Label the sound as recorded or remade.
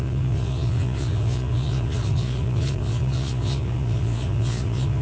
remade